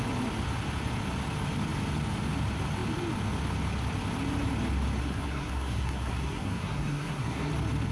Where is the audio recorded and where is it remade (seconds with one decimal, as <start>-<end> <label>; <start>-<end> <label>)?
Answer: 0.0-5.0 recorded; 5.0-7.5 remade; 7.5-7.9 recorded